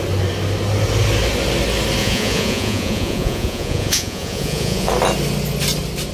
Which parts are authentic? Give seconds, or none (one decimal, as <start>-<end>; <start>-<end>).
0.0-2.0; 4.9-6.1